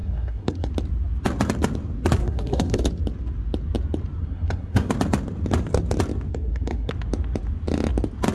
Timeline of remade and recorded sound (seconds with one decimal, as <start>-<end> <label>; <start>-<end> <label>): 0.0-0.7 remade; 0.7-2.2 recorded; 2.2-2.8 remade; 2.8-4.2 recorded; 4.2-4.9 remade; 4.9-6.3 recorded; 6.3-6.9 remade; 6.9-8.3 recorded